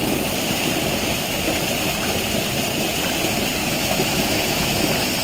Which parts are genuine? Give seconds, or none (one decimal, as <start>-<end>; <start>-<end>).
0.0-3.6; 4.8-5.2